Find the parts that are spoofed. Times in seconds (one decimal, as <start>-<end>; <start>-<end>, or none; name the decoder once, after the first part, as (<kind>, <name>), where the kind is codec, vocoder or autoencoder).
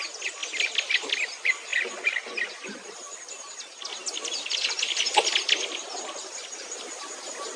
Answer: none